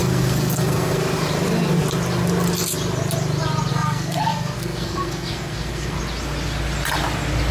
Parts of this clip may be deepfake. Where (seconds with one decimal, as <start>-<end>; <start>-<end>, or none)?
0.0-1.0; 3.7-6.0